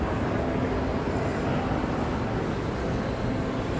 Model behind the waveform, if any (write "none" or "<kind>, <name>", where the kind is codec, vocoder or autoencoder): none